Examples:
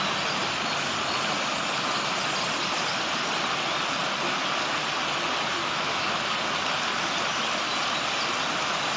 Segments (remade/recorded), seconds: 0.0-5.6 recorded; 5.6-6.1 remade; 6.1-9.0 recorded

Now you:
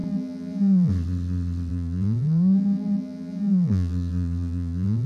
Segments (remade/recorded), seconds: 0.0-0.9 remade; 0.9-1.7 recorded; 1.7-5.1 remade

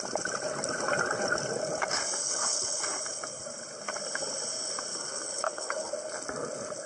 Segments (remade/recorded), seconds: 0.0-2.2 recorded; 2.2-2.8 remade; 2.8-4.9 recorded; 4.9-5.9 remade; 5.9-6.9 recorded

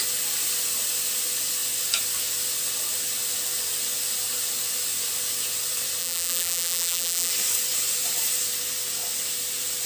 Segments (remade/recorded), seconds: 0.0-6.0 recorded; 6.0-7.3 remade; 7.3-9.9 recorded

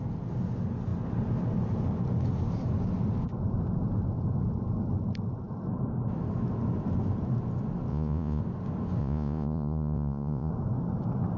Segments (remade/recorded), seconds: 0.0-7.9 recorded; 7.9-8.4 remade; 8.4-9.0 recorded; 9.0-10.5 remade; 10.5-11.4 recorded

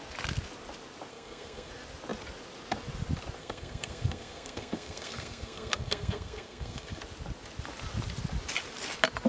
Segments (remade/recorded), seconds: 0.0-1.1 recorded; 1.1-1.7 remade; 1.7-3.4 recorded; 3.4-7.0 remade; 7.0-9.3 recorded

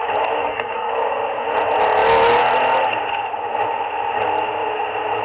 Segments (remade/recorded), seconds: 0.0-0.4 recorded; 0.4-0.9 remade; 0.9-5.2 recorded